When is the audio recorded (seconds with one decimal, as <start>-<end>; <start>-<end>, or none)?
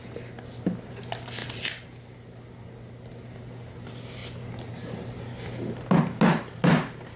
0.0-7.2